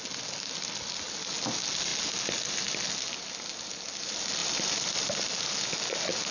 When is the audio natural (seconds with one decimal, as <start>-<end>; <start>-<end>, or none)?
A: 0.0-4.4; 5.4-6.3